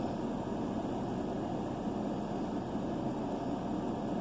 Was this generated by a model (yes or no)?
no